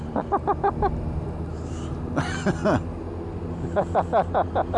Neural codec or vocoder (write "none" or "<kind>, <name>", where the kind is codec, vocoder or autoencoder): none